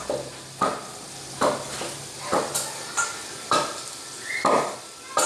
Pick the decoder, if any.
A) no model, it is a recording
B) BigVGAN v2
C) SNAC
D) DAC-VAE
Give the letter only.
A